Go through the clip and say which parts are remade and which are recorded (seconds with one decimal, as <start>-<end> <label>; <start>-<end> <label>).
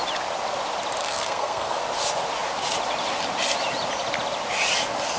0.0-1.0 recorded; 1.0-1.8 remade; 1.8-5.2 recorded